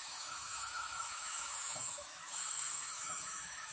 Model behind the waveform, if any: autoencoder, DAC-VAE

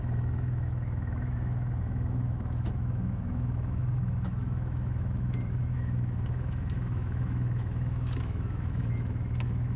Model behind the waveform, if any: autoencoder, DAC-VAE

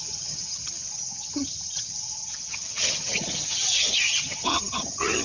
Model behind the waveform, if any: vocoder, HiFi-GAN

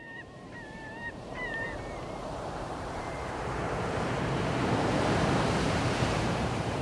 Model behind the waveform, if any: vocoder, BigVGAN v2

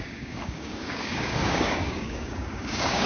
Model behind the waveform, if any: codec, DAC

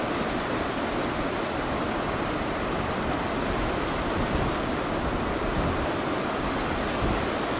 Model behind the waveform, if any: none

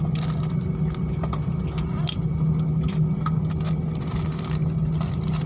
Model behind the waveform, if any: none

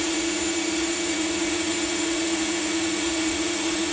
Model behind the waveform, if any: vocoder, Vocos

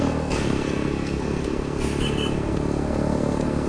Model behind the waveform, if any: codec, SNAC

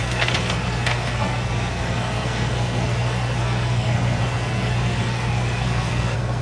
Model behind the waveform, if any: codec, SNAC